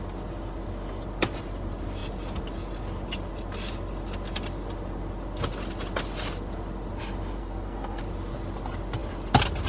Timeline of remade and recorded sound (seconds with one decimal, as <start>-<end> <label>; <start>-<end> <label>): 0.0-7.4 recorded; 7.4-8.0 remade; 8.0-9.7 recorded